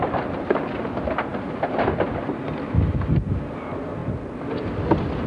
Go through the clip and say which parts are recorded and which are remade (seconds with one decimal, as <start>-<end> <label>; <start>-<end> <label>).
0.0-5.3 recorded